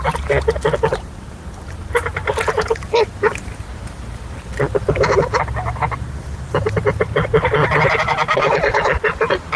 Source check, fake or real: real